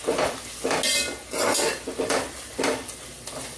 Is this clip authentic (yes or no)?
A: yes